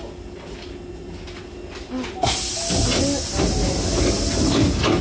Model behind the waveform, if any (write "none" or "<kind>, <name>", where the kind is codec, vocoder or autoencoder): none